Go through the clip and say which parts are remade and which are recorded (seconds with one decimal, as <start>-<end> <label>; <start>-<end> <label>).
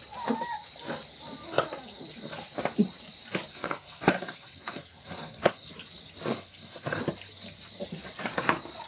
0.0-3.5 recorded; 3.5-5.7 remade; 5.7-6.3 recorded; 6.3-7.0 remade; 7.0-8.9 recorded